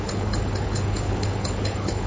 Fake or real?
fake